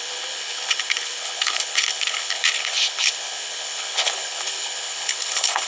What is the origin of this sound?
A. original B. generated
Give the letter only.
B